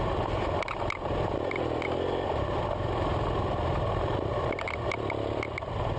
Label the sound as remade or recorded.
recorded